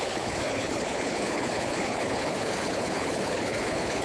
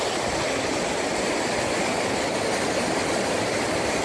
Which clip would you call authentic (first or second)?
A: second